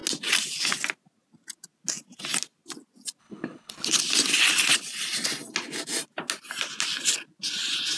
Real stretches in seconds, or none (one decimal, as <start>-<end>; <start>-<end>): 0.0-3.2; 4.0-8.0